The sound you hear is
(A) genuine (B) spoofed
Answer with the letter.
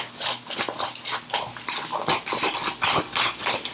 A